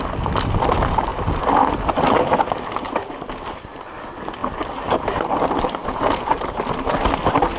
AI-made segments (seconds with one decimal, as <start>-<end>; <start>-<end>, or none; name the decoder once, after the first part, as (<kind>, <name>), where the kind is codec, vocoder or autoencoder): none